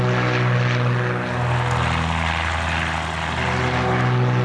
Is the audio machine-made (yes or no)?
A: no